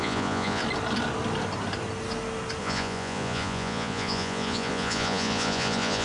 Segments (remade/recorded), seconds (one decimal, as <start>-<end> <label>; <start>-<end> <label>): 0.0-0.6 remade; 0.6-2.6 recorded; 2.6-6.0 remade